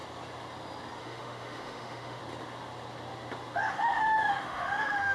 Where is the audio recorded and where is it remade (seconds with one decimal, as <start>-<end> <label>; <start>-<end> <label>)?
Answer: 0.0-1.0 recorded; 1.0-2.2 remade; 2.2-3.7 recorded; 3.7-5.1 remade